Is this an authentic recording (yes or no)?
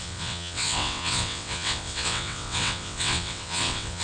no